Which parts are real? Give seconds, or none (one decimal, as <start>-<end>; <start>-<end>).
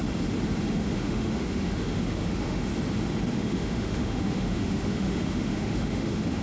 0.0-0.7; 2.7-3.3